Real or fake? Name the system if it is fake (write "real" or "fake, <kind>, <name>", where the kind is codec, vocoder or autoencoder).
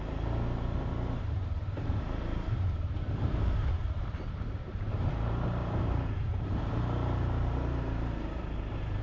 fake, vocoder, BigVGAN v2